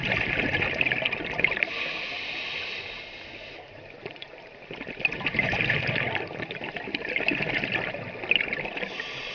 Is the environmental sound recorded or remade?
recorded